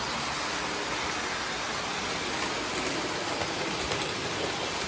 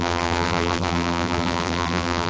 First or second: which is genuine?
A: first